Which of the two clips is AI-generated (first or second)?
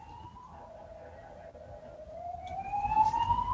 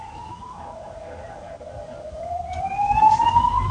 second